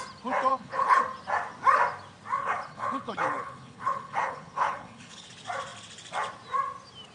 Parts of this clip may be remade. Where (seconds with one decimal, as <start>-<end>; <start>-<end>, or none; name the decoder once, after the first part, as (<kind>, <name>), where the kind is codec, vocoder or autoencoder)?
0.5-1.0 (codec, HILCodec); 2.4-5.3

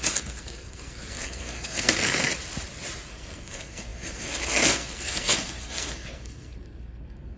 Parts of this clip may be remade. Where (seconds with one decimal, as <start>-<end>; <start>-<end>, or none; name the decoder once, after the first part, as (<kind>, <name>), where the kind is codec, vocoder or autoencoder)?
0.0-2.3 (codec, SNAC); 3.1-7.4

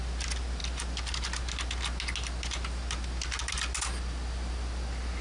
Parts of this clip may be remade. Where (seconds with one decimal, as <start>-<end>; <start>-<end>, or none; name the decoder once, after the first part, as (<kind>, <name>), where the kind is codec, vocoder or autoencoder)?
none